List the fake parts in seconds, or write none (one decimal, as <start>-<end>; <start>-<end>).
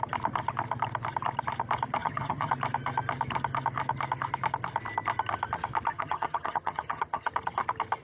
2.0-2.5; 5.9-7.3